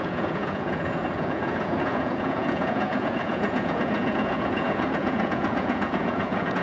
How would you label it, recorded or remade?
remade